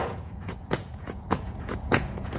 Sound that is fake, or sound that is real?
fake